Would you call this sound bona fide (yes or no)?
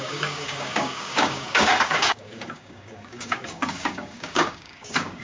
no